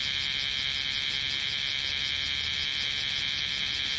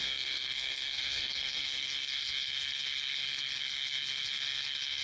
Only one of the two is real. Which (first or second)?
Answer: first